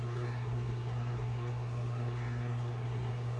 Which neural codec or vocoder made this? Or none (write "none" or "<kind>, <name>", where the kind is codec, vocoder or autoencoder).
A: codec, SNAC